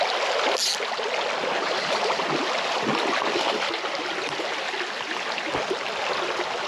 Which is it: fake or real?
real